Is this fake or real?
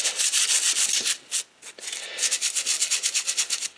real